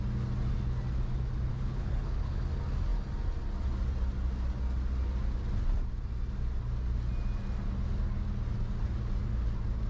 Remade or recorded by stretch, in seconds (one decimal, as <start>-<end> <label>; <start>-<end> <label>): 0.0-1.5 recorded; 1.5-2.4 remade; 2.4-9.9 recorded